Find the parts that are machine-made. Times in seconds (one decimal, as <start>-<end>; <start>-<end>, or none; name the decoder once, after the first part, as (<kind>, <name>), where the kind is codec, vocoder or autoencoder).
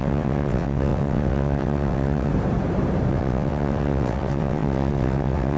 0.0-2.3 (vocoder, WaveNeXt); 3.1-5.6